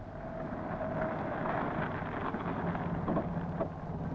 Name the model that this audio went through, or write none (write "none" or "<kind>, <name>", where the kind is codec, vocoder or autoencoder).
none